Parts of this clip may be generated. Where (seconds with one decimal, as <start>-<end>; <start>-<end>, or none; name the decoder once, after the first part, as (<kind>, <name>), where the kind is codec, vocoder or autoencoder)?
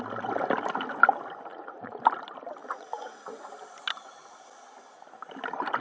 1.5-2.0 (vocoder, Vocos); 2.6-3.5